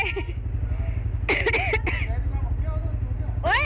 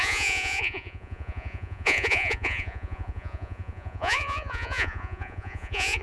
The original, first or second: first